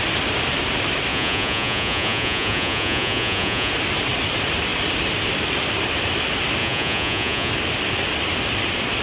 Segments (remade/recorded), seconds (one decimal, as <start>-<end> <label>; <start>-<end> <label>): 0.0-1.1 recorded; 1.1-3.7 remade; 3.7-6.6 recorded; 6.6-7.5 remade; 7.5-9.0 recorded